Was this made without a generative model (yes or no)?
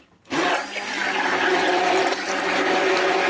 yes